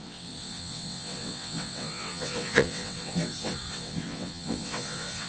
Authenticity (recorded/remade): remade